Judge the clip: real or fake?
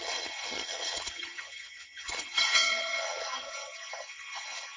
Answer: fake